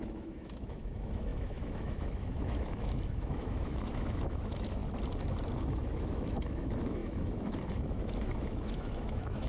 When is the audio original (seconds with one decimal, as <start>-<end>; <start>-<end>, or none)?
4.8-5.6